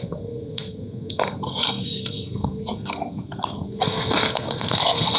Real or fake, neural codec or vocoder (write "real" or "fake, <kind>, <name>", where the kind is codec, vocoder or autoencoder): fake, codec, SNAC